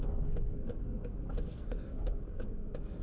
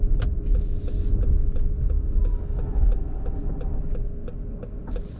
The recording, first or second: second